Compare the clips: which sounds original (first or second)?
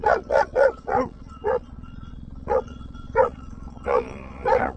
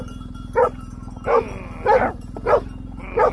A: second